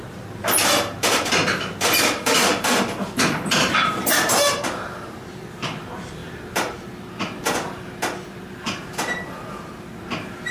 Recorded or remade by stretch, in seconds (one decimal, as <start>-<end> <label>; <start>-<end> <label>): 0.0-10.5 remade